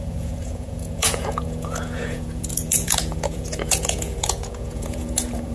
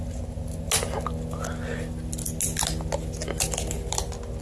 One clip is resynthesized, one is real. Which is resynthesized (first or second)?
first